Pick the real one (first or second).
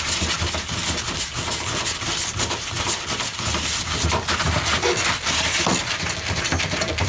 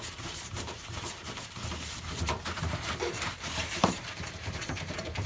first